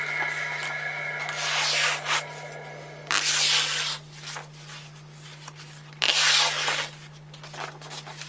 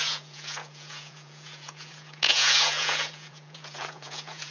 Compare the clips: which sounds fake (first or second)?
second